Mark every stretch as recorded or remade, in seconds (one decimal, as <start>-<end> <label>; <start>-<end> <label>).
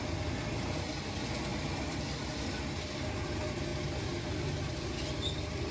0.0-5.7 recorded